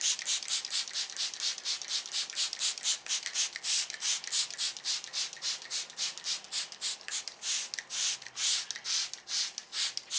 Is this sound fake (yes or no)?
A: no